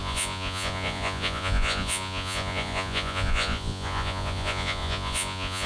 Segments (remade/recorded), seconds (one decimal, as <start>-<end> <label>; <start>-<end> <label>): 0.0-5.7 remade